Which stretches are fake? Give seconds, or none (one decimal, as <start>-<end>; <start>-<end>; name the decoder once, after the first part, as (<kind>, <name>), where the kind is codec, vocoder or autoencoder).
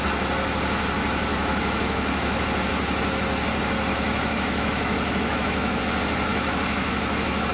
1.3-2.4 (autoencoder, DAC-VAE); 3.9-5.8; 6.3-7.5